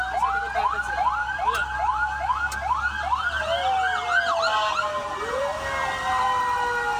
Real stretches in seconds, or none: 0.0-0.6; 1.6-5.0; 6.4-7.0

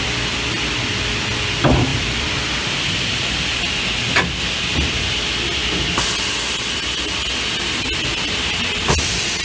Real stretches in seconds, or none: 0.0-1.9; 3.6-9.4

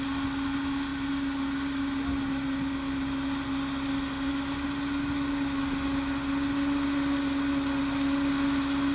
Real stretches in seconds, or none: 0.0-8.9